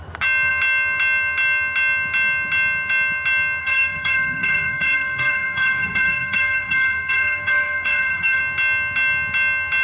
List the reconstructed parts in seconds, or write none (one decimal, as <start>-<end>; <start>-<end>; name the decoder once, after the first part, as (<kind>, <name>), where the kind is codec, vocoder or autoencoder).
3.6-8.4 (codec, SNAC)